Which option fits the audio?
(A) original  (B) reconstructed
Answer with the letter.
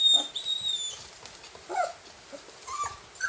A